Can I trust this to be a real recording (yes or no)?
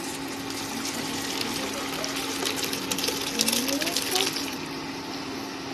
yes